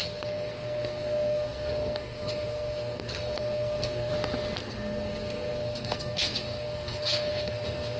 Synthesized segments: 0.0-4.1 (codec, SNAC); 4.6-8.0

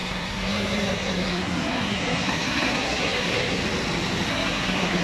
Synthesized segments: 0.0-3.6 (codec, SNAC); 4.3-5.0

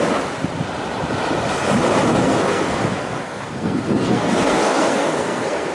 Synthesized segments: 2.1-5.7 (codec, SNAC)

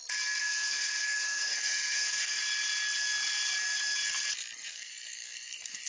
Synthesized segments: 0.4-2.4 (codec, SNAC); 4.7-5.9

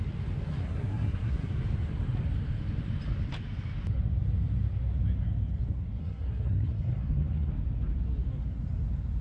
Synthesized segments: 0.5-1.5 (codec, SNAC); 6.0-7.5

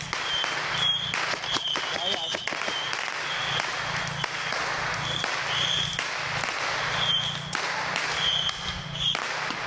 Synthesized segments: none

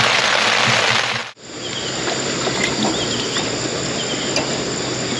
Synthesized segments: none